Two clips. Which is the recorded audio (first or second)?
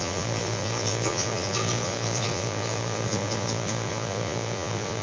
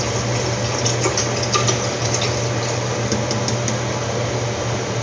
second